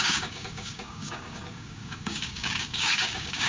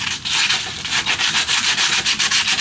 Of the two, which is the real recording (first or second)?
second